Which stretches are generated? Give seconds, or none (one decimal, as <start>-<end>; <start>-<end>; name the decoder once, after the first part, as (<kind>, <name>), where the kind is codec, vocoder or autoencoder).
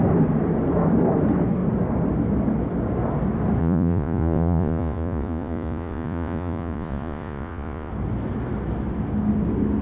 3.6-7.9 (vocoder, Vocos)